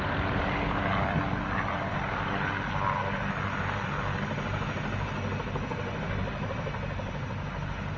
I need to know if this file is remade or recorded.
recorded